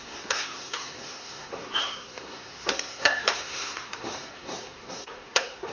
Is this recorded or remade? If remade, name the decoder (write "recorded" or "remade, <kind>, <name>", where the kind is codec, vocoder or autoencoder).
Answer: remade, codec, SNAC